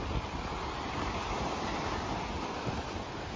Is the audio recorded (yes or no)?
yes